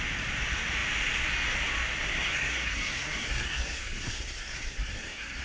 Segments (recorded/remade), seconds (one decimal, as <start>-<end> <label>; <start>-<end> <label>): 0.0-2.1 recorded; 2.1-5.4 remade